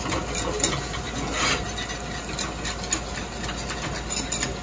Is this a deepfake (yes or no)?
no